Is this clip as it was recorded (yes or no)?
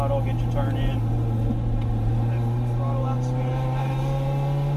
yes